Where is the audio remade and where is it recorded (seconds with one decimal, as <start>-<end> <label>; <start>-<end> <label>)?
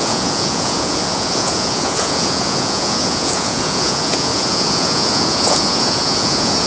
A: 0.0-6.7 remade